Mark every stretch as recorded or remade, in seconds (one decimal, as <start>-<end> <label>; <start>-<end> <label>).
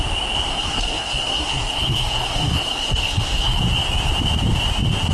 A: 0.0-0.5 recorded; 0.5-3.6 remade; 3.6-5.1 recorded